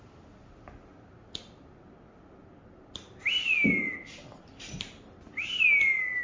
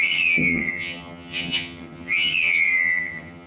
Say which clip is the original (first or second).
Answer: first